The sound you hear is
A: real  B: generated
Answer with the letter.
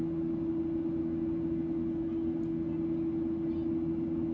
A